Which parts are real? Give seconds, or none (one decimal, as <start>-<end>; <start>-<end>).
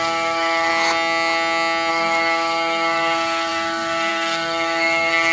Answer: 0.7-1.9